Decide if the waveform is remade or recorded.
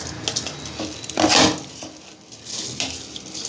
recorded